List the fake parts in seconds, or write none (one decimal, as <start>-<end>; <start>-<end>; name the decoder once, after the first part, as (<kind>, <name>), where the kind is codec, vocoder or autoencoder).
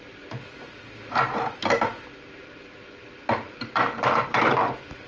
none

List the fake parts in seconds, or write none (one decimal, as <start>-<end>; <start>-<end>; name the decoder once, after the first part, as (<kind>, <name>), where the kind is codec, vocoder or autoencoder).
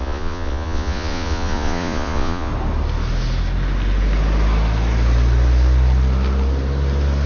0.0-2.5 (vocoder, Vocos)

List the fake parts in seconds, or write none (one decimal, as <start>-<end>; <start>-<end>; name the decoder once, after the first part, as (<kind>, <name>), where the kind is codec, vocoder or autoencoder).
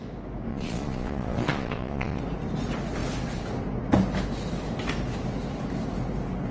0.5-2.2 (vocoder, Vocos)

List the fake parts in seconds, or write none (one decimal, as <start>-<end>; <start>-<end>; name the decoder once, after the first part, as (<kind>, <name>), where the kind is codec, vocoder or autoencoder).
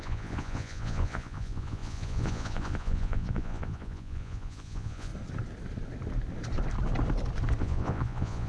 0.0-5.1 (vocoder, Vocos); 7.6-8.5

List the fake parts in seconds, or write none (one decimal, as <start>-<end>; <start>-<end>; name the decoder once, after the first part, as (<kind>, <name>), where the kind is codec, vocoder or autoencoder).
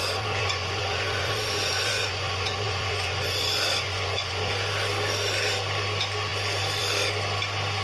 0.0-4.5 (vocoder, Vocos)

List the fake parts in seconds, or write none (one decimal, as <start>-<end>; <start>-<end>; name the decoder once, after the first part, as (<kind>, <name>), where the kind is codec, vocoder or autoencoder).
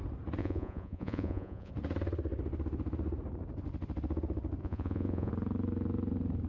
0.4-1.7 (vocoder, Vocos); 4.6-5.3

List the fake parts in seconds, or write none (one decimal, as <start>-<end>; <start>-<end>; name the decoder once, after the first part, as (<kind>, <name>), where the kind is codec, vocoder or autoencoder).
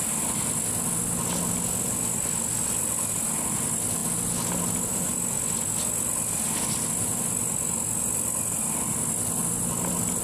none